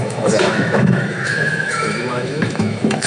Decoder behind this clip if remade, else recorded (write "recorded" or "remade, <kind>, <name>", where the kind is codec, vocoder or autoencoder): remade, autoencoder, DAC-VAE